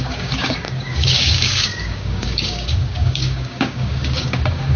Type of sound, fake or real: fake